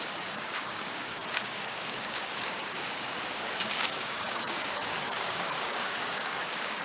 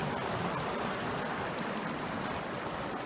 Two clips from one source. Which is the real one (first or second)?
second